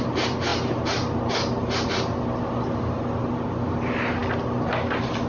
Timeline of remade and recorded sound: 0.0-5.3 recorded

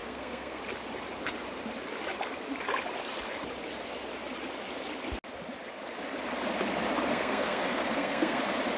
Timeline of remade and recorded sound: 0.0-0.6 remade; 0.6-7.1 recorded; 7.1-8.4 remade; 8.4-8.8 recorded

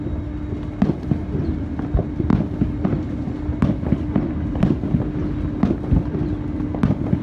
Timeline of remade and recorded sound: 0.0-7.2 recorded

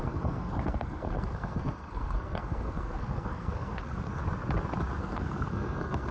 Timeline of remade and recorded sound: 0.0-4.2 remade; 4.2-5.0 recorded; 5.0-6.1 remade

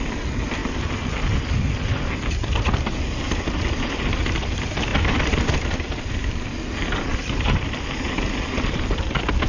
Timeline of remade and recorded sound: 0.0-9.5 recorded

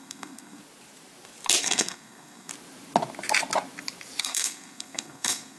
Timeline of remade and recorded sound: 0.0-0.6 remade; 0.6-1.6 recorded; 1.6-2.5 remade; 2.5-4.2 recorded; 4.2-5.6 remade